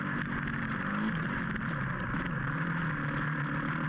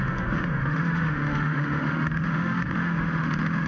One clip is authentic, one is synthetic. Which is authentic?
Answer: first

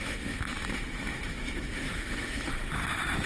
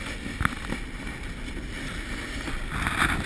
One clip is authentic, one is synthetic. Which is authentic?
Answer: second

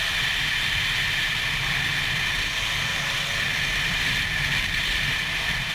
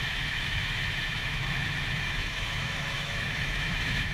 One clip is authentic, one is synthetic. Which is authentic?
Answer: first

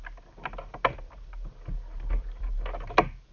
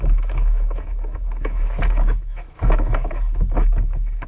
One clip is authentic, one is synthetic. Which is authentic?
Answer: first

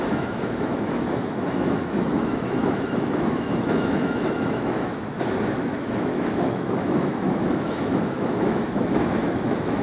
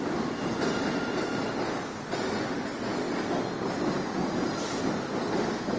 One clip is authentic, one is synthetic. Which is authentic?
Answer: second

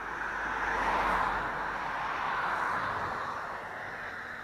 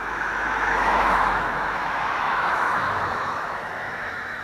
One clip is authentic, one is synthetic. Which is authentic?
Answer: first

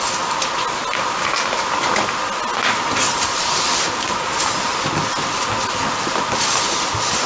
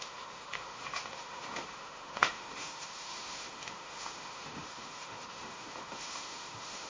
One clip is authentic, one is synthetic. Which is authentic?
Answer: first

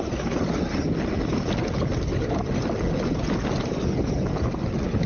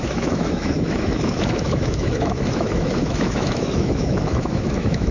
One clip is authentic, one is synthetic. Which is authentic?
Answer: first